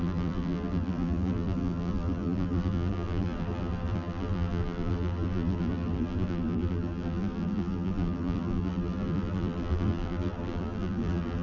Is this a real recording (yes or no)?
no